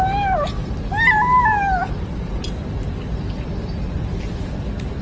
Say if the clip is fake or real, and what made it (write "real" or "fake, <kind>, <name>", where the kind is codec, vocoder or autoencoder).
real